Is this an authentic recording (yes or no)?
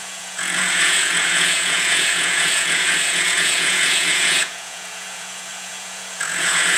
no